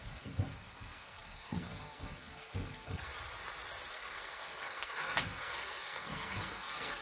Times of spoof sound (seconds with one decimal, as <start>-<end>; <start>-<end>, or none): 0.0-3.1; 3.9-7.0